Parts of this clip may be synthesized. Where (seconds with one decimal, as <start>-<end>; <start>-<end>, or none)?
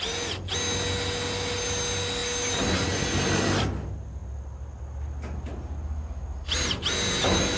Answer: none